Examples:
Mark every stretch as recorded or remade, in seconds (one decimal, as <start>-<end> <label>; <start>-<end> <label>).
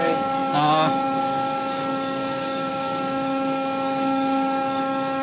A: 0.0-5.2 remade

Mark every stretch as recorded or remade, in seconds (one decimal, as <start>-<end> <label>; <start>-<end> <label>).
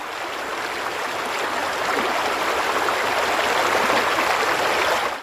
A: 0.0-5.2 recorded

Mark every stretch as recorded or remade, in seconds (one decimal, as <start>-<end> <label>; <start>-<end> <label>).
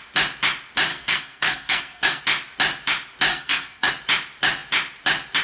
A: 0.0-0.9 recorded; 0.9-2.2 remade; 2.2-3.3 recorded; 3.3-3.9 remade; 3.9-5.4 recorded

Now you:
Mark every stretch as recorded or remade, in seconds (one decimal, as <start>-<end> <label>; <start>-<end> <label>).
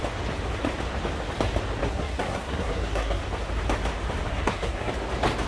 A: 0.0-1.8 recorded; 1.8-3.2 remade; 3.2-4.3 recorded; 4.3-4.9 remade; 4.9-5.5 recorded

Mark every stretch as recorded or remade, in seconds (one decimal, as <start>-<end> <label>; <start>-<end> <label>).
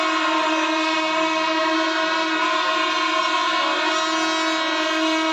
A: 0.0-5.3 recorded